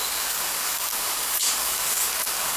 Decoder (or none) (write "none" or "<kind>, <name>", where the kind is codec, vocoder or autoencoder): codec, DAC